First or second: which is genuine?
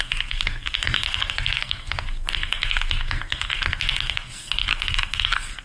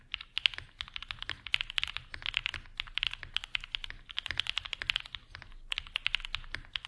second